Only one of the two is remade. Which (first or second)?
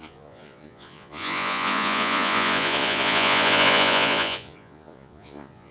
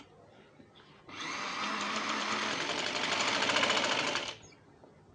first